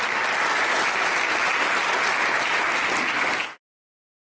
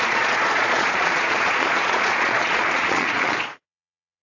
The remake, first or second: second